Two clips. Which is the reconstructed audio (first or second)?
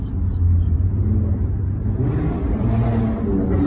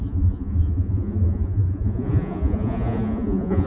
second